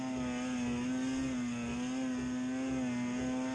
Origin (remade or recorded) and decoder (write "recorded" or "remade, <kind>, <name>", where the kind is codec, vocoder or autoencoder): recorded